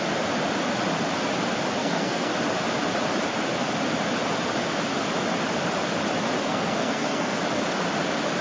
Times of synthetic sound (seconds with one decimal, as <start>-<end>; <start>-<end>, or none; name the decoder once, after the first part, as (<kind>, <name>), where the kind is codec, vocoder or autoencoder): 1.8-2.3 (codec, SNAC); 6.4-7.4